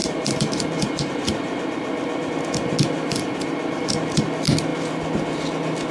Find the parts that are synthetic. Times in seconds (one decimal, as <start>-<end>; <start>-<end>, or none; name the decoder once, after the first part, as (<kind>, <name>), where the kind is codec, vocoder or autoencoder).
0.0-2.3 (vocoder, BigVGAN v2)